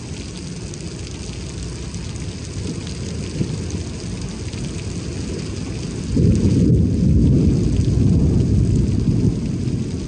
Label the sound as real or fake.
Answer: real